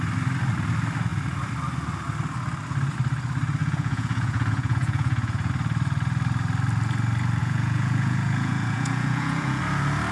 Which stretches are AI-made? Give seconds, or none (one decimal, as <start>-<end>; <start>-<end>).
3.6-5.5; 7.4-9.6